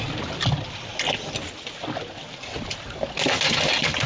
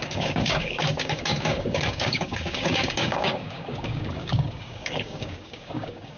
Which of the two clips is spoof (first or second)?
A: second